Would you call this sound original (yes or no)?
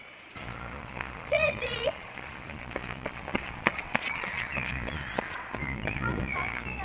no